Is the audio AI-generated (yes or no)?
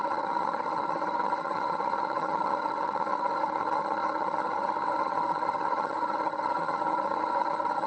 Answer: yes